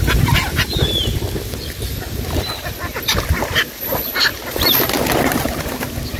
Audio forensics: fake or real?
real